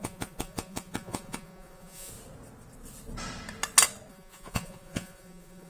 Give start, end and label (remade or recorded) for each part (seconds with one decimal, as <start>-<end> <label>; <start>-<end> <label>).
0.0-2.1 remade; 2.1-4.1 recorded; 4.1-5.7 remade